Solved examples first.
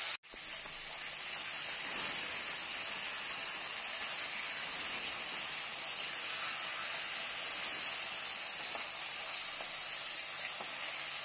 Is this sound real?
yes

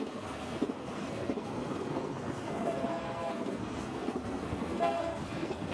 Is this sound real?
no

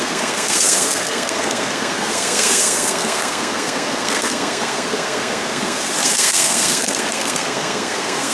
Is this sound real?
no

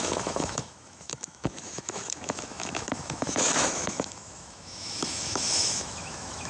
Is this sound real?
no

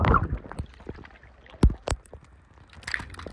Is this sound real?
yes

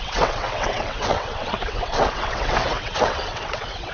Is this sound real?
no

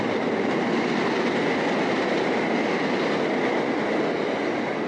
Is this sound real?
yes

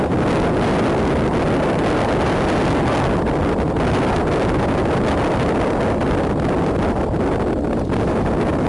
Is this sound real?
yes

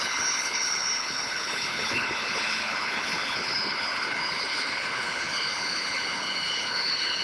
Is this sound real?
no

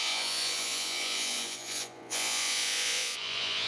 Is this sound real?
no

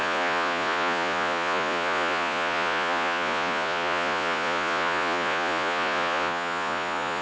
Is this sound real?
no